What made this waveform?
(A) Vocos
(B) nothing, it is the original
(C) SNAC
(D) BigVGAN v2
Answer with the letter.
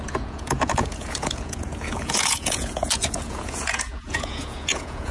A